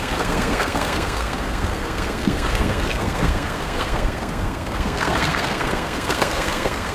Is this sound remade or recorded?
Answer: remade